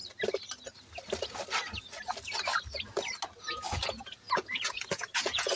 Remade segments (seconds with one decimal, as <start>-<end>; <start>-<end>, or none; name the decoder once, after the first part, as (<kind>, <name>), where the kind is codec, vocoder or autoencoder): 3.4-5.6 (vocoder, Vocos)